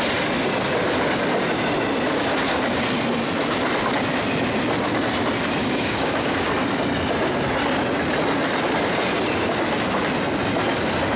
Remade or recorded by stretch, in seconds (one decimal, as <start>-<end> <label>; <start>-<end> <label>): 0.0-5.6 recorded; 5.6-6.5 remade; 6.5-11.2 recorded